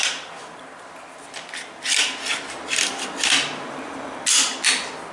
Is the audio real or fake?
real